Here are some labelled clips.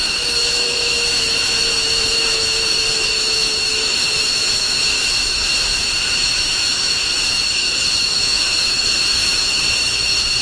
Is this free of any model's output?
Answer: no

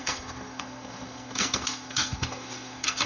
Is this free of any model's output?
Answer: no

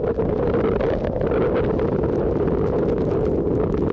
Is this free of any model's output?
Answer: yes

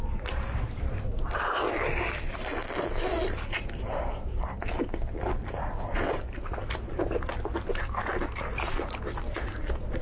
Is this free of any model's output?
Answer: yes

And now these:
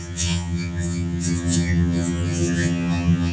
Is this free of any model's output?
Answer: no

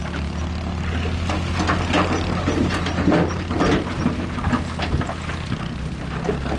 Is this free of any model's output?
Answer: yes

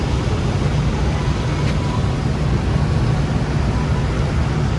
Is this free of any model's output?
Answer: yes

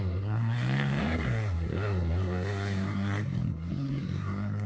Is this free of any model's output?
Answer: no